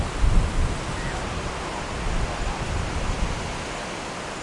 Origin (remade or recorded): recorded